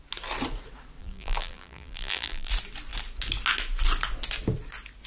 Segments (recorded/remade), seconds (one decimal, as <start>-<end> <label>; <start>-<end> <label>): 0.0-1.0 recorded; 1.0-2.5 remade; 2.5-5.1 recorded